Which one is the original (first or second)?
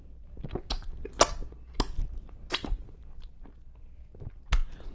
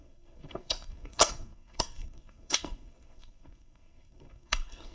first